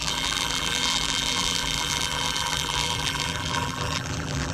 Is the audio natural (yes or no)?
no